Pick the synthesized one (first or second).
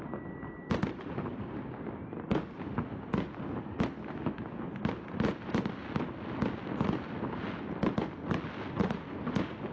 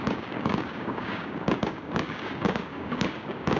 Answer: second